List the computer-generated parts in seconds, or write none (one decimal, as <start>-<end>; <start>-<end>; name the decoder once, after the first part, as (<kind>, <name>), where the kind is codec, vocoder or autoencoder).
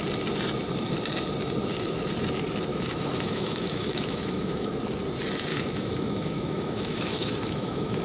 2.7-4.8 (autoencoder, DAC-VAE); 5.5-8.0